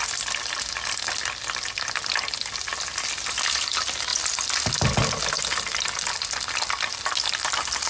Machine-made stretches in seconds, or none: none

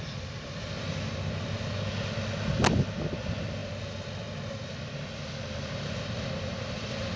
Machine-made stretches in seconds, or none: 0.0-1.9 (vocoder, BigVGAN v2); 3.2-7.2

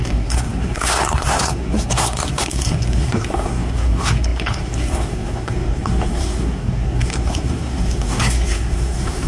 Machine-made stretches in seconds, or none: 0.0-9.3 (codec, SNAC)

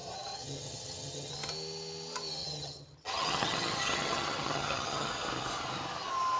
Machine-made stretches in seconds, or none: 0.0-1.3 (vocoder, HiFi-GAN); 2.4-5.1

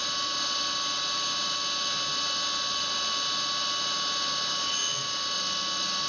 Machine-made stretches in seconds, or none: none

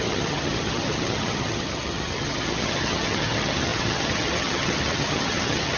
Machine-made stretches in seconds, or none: 0.0-5.8 (vocoder, HiFi-GAN)

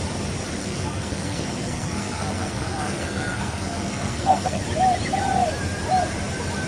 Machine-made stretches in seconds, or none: 0.6-4.6 (codec, SNAC)

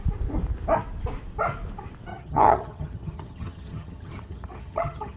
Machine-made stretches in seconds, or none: 2.1-5.2 (vocoder, HiFi-GAN)